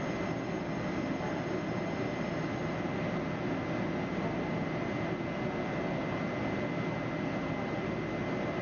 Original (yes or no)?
yes